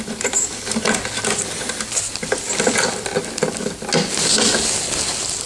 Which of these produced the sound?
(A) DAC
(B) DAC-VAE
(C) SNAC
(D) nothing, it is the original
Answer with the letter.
D